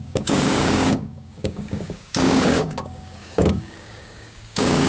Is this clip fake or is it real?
fake